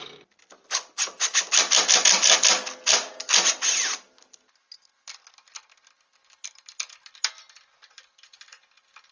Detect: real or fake real